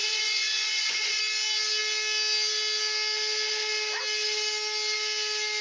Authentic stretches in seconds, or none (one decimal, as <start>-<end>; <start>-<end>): 1.2-5.6